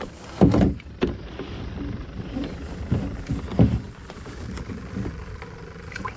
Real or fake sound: real